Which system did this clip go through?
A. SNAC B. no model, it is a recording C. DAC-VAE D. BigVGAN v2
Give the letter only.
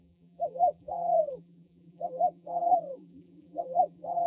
D